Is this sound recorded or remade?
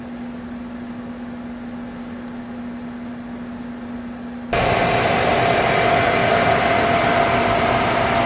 recorded